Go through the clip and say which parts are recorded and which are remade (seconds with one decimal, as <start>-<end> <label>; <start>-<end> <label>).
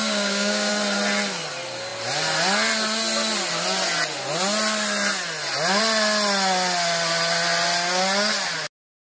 0.0-0.7 remade; 0.7-9.1 recorded